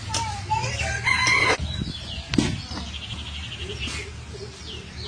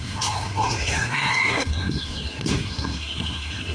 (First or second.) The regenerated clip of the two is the second